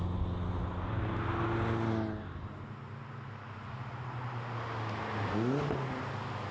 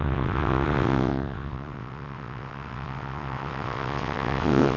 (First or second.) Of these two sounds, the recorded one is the first